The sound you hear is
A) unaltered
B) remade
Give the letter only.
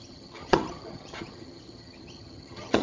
B